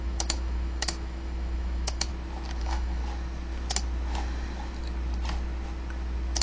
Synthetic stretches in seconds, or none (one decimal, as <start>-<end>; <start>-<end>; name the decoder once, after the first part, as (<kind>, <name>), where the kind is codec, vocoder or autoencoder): 0.0-2.1 (autoencoder, DAC-VAE); 2.6-3.0